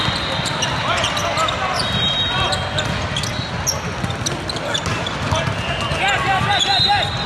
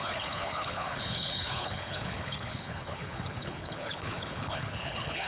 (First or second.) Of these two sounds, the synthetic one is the second